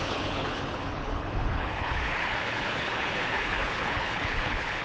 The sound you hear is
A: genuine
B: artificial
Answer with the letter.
B